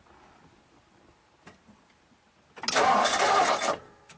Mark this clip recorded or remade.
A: recorded